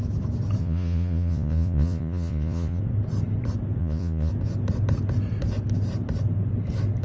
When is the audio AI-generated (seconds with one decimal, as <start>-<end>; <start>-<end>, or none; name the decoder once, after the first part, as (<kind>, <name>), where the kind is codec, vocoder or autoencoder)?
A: 0.6-2.8 (vocoder, Vocos); 3.8-4.3